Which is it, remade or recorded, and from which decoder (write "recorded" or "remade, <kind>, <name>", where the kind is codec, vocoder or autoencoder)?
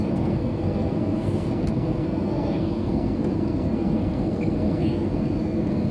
remade, codec, SNAC